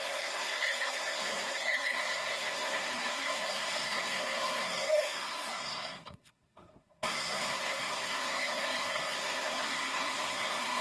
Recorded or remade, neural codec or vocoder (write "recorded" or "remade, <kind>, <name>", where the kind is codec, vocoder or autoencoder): remade, codec, SNAC